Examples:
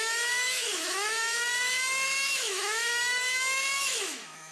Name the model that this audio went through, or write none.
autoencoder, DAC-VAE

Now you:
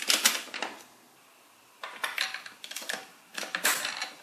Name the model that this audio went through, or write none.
none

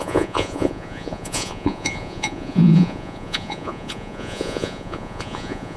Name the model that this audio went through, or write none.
vocoder, Vocos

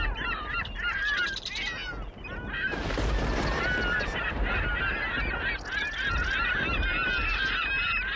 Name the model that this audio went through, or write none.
none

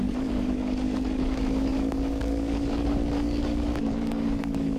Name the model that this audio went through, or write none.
codec, DAC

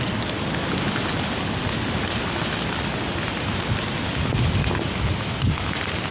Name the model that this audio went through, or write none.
none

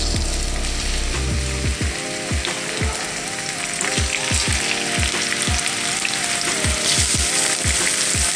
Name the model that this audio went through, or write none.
none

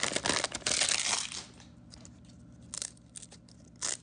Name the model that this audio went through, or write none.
none